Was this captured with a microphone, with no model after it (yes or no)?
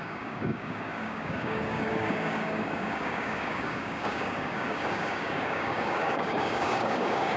no